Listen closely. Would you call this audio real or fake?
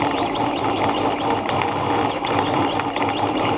real